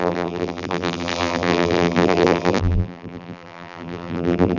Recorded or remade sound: remade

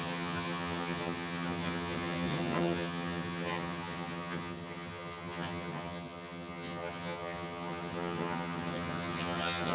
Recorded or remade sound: remade